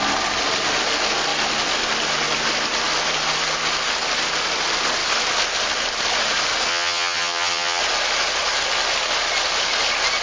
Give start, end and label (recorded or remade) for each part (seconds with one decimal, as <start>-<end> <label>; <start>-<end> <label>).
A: 0.0-6.7 recorded; 6.7-7.8 remade; 7.8-10.2 recorded